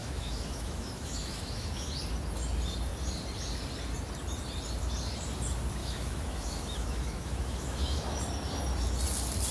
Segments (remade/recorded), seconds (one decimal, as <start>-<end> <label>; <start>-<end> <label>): 0.0-1.9 remade; 1.9-5.8 recorded; 5.8-8.2 remade; 8.2-9.5 recorded